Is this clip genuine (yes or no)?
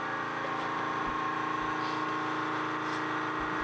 yes